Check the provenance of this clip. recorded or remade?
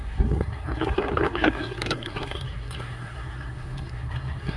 remade